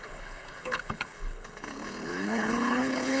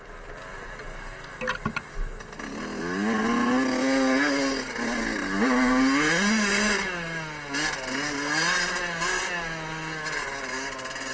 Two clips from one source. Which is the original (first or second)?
second